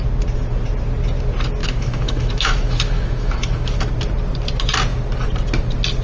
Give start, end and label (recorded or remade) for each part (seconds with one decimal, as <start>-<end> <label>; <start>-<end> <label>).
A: 0.0-1.6 recorded; 1.6-3.8 remade; 3.8-6.0 recorded